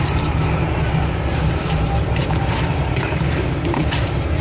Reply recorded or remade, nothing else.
remade